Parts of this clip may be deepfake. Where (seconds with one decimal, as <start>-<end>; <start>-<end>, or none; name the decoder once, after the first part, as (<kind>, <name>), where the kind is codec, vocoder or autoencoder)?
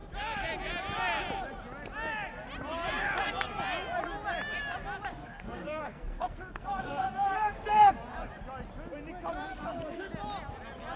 5.2-7.9 (codec, SNAC); 9.5-10.1